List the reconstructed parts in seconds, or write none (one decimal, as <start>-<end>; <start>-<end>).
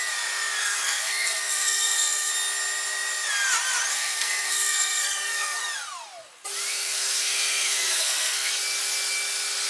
0.6-2.3; 3.9-5.6; 6.7-8.5